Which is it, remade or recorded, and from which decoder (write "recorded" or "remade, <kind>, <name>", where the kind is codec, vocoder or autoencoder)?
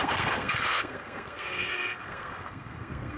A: remade, codec, SNAC